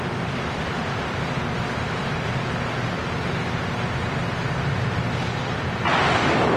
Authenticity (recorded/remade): recorded